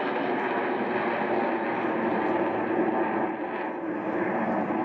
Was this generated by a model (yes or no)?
no